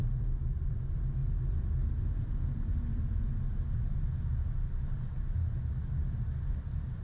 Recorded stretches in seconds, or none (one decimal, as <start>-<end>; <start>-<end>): 0.0-1.2; 5.4-7.0